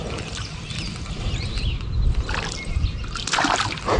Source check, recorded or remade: recorded